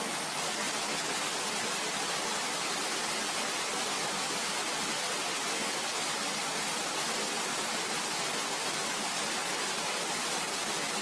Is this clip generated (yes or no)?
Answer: no